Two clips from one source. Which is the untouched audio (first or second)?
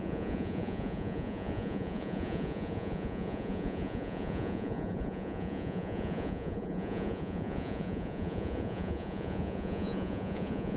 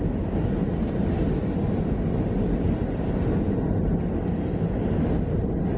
second